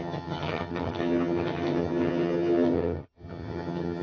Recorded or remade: remade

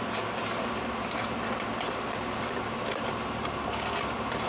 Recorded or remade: recorded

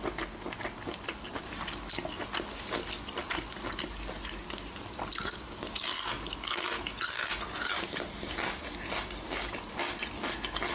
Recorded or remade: recorded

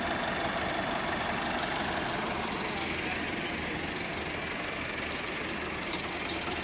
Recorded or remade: recorded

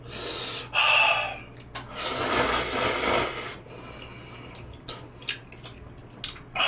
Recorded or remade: recorded